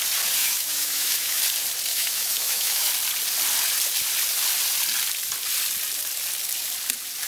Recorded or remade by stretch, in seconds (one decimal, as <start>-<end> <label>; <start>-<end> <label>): 0.0-0.4 recorded; 0.4-1.4 remade; 1.4-1.9 recorded; 1.9-2.9 remade; 2.9-7.3 recorded